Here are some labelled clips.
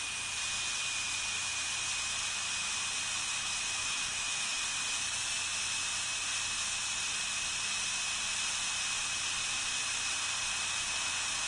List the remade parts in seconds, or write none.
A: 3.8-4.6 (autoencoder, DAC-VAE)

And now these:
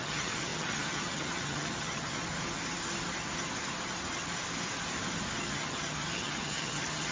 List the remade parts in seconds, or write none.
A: 0.0-2.2 (vocoder, HiFi-GAN); 5.4-7.1

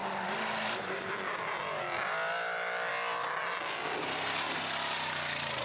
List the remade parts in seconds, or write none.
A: none